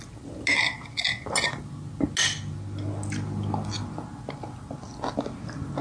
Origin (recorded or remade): recorded